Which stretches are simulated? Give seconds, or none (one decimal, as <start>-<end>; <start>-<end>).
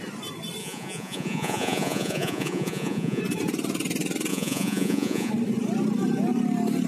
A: 0.6-3.2; 4.3-5.3